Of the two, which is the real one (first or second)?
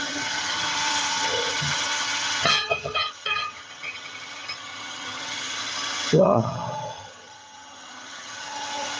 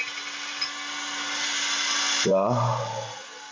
second